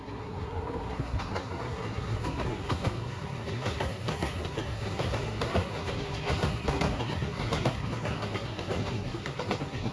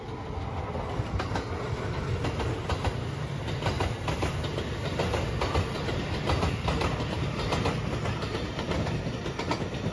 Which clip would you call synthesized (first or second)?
first